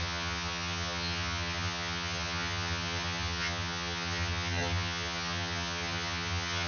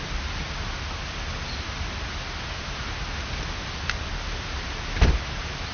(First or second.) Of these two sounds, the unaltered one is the second